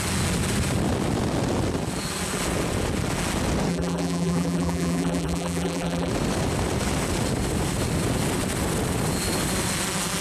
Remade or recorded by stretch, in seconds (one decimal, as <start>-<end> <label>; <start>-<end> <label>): 0.0-3.7 recorded; 3.7-6.1 remade; 6.1-10.2 recorded